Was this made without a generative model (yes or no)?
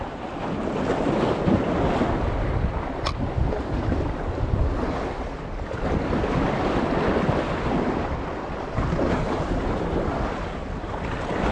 yes